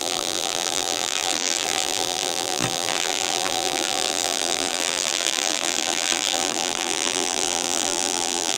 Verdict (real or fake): fake